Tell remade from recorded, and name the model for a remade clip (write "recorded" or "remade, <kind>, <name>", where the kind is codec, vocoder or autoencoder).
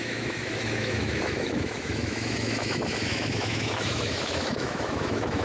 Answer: remade, autoencoder, DAC-VAE